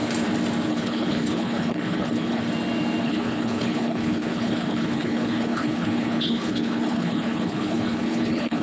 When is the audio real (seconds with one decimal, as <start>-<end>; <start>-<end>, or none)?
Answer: 0.0-0.7; 2.4-3.0